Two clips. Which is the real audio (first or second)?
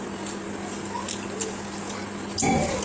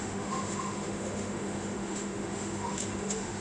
first